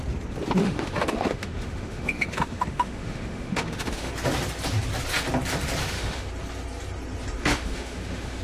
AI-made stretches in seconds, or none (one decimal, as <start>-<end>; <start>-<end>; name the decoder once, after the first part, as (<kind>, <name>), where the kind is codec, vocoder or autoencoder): 0.6-4.1 (autoencoder, DAC-VAE); 5.8-6.3; 7.4-8.4